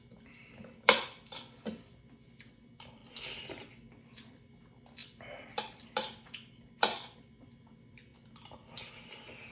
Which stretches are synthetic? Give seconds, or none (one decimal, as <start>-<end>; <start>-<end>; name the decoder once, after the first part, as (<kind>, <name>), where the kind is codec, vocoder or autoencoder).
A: 0.4-1.4 (vocoder, BigVGAN v2); 5.0-5.6